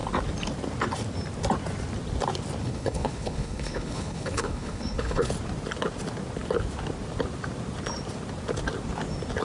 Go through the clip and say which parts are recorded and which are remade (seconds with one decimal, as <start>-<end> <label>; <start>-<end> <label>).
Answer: 0.0-2.6 recorded; 2.6-5.3 remade; 5.3-9.4 recorded